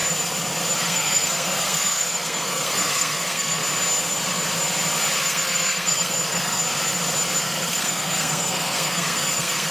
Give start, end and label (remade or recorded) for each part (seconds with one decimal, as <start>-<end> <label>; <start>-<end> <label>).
0.0-0.8 recorded; 0.8-3.6 remade; 3.6-5.2 recorded; 5.2-6.6 remade; 6.6-7.4 recorded; 7.4-9.7 remade

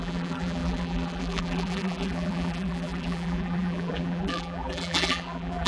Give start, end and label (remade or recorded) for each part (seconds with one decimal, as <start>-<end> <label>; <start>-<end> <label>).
0.0-5.7 remade

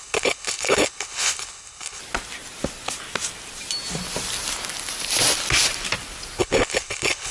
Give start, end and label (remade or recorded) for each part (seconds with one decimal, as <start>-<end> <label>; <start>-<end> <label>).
0.0-2.0 remade; 2.0-6.4 recorded; 6.4-7.3 remade

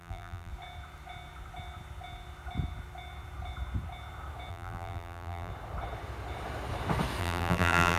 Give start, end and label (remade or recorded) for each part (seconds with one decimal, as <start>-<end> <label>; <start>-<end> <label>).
0.0-0.5 remade; 0.5-4.5 recorded; 4.5-5.5 remade; 5.5-7.2 recorded; 7.2-8.0 remade

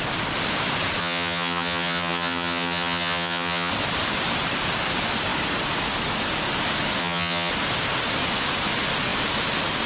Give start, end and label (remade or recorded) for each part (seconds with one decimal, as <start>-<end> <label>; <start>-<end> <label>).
0.0-1.0 recorded; 1.0-3.7 remade; 3.7-7.0 recorded; 7.0-7.5 remade; 7.5-9.9 recorded

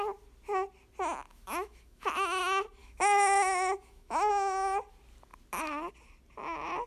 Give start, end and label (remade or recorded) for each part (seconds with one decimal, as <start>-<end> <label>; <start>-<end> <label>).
0.0-1.3 recorded; 1.3-2.4 remade; 2.4-2.8 recorded; 2.8-4.3 remade; 4.3-6.9 recorded

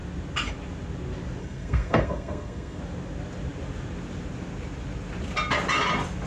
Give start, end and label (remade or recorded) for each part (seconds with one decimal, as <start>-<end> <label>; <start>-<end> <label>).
0.0-1.4 recorded; 1.4-2.8 remade; 2.8-6.3 recorded

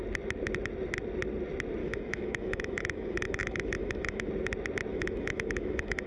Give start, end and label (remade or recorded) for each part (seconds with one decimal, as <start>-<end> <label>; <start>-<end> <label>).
0.0-1.8 recorded; 1.8-4.3 remade; 4.3-4.9 recorded; 4.9-6.1 remade